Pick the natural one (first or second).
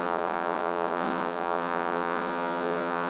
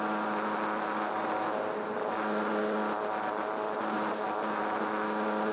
second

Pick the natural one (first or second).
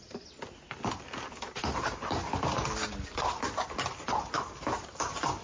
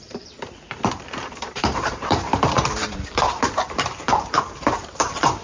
first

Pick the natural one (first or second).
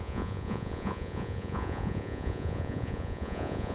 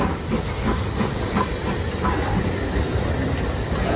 second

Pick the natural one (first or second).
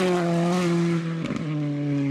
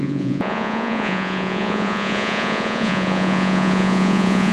first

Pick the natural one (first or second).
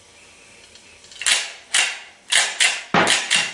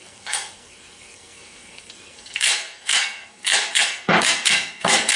first